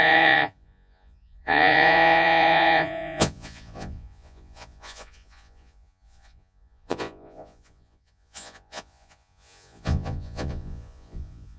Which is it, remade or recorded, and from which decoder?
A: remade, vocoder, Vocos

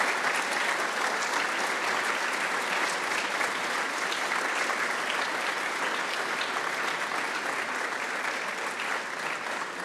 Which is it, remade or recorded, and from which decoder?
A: recorded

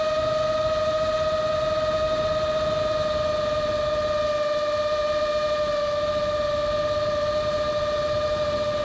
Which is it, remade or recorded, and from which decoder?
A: recorded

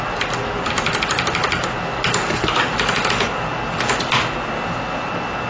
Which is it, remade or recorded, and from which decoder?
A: recorded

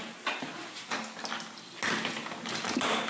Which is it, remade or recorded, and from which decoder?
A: recorded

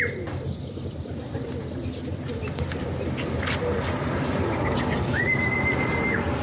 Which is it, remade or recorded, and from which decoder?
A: recorded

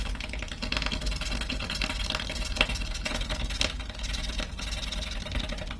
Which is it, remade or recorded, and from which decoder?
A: recorded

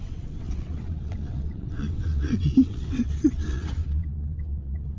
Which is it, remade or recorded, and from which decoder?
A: remade, vocoder, WaveNeXt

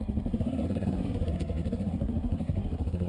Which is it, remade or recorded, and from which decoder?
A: remade, codec, SNAC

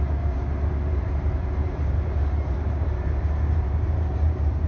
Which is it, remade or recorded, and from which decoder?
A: remade, vocoder, BigVGAN v2